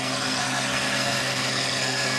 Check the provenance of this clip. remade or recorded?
remade